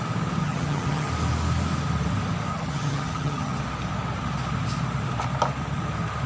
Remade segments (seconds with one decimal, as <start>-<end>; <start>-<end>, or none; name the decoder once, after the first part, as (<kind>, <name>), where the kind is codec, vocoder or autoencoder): 0.4-1.1 (vocoder, HiFi-GAN); 2.5-3.6